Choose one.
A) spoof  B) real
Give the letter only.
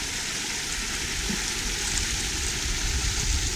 B